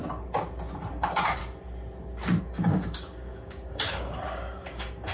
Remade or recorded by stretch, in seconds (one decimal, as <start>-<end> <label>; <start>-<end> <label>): 0.0-0.9 recorded; 0.9-1.4 remade; 1.4-2.4 recorded; 2.4-5.1 remade